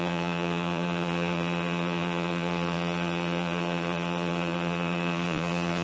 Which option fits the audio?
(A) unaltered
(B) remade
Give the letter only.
B